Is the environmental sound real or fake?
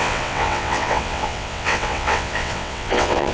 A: fake